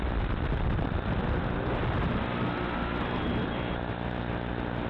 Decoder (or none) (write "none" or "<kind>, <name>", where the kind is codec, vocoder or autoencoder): none